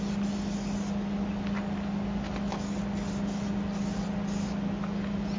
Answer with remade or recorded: recorded